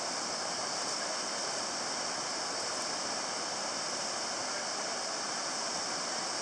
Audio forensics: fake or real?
real